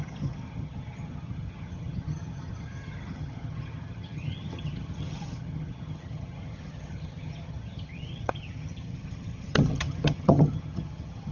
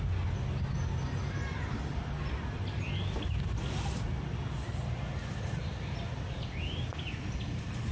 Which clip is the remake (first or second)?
first